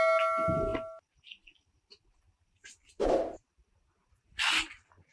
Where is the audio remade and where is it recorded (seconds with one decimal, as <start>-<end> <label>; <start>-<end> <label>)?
0.0-5.1 recorded